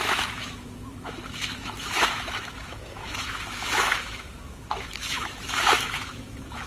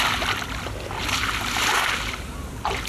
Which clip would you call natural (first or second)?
second